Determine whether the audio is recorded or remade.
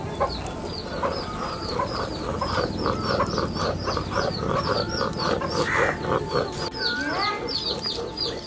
recorded